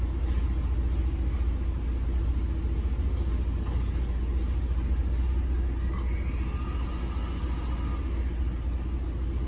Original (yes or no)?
yes